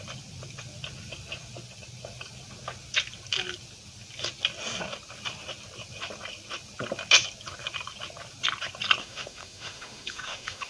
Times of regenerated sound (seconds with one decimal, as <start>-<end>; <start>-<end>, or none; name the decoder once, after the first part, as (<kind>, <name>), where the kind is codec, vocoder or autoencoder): 9.0-10.7 (autoencoder, DAC-VAE)